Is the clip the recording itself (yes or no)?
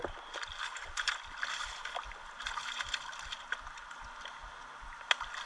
yes